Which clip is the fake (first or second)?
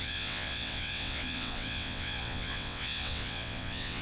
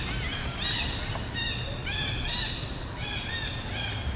first